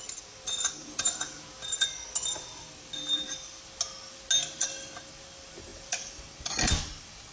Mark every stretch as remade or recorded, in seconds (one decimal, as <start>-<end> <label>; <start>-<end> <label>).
0.0-0.8 recorded; 0.8-1.7 remade; 1.7-7.3 recorded